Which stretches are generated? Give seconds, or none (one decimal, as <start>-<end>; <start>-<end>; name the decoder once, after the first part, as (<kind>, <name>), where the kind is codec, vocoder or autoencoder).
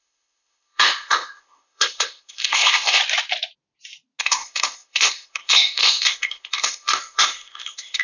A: 0.0-3.0 (codec, ZipCodec); 4.2-8.0